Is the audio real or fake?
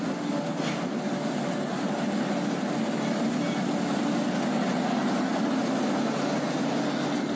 real